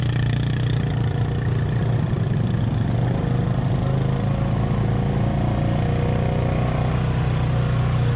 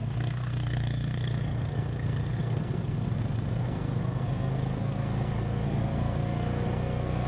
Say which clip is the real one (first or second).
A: first